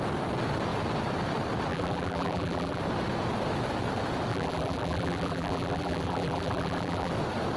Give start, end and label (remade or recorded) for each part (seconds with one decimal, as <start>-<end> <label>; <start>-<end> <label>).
0.0-1.7 recorded; 1.7-2.8 remade; 2.8-4.3 recorded; 4.3-7.1 remade; 7.1-7.6 recorded